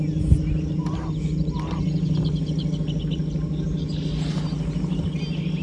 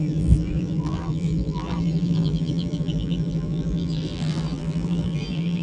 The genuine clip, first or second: first